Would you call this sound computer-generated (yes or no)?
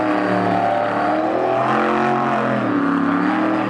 no